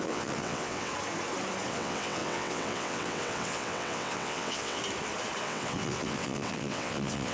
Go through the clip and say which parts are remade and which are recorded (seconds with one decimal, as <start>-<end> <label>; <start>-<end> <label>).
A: 0.0-0.9 remade; 0.9-1.7 recorded; 1.7-4.8 remade; 4.8-5.4 recorded; 5.4-7.3 remade